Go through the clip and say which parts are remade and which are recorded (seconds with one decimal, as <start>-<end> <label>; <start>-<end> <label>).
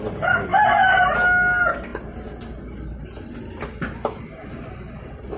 0.0-5.4 recorded